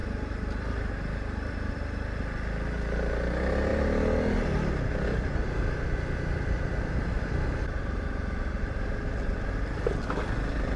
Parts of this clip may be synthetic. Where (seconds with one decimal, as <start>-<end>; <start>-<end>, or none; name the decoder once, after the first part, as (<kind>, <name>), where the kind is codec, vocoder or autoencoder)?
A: none